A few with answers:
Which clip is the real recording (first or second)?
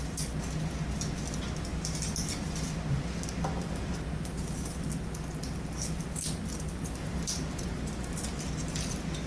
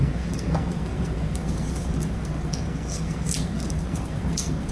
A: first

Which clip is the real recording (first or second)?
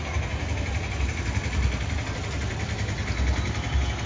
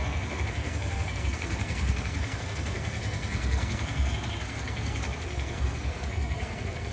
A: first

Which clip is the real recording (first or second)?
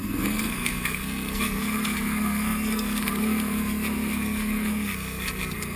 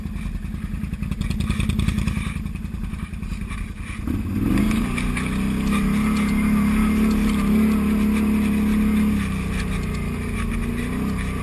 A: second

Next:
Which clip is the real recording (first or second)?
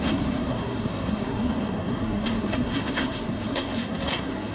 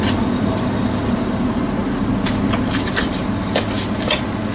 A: second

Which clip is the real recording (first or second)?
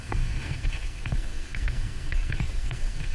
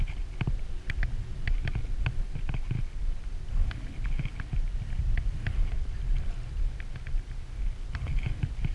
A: second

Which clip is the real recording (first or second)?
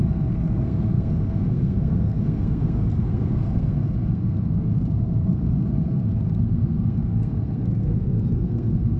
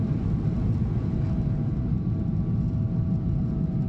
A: second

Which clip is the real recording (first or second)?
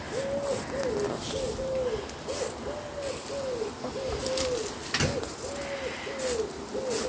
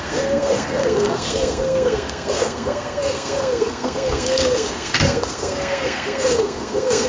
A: first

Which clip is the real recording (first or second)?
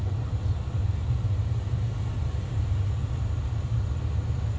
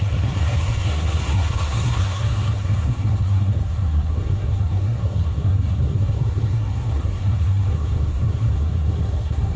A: first